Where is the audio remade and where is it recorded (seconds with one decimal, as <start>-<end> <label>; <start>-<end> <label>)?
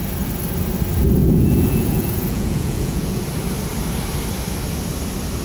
0.0-1.2 recorded; 1.2-3.2 remade; 3.2-5.4 recorded